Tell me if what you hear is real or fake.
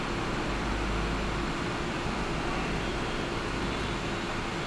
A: real